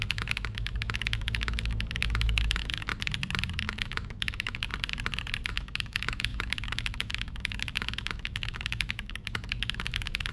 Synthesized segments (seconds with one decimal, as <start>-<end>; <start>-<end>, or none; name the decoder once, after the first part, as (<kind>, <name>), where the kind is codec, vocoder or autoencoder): 0.0-2.9 (autoencoder, DAC-VAE); 3.6-4.7; 5.5-10.3